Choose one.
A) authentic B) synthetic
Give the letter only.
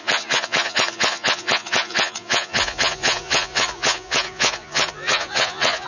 B